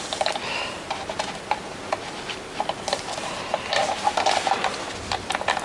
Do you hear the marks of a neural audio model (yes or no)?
no